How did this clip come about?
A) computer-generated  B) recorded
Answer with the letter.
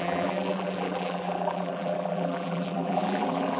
A